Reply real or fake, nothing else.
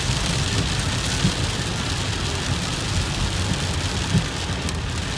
real